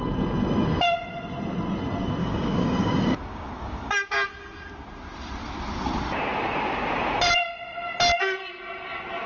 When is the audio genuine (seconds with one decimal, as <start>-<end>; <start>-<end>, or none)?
0.0-2.2; 4.1-9.3